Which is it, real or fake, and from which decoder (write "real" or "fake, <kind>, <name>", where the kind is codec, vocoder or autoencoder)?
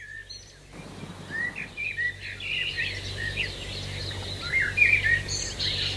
real